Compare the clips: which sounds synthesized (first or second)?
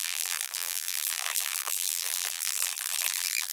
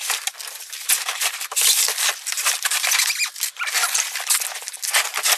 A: first